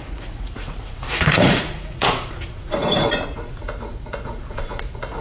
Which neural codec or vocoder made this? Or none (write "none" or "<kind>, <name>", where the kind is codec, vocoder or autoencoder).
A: vocoder, Vocos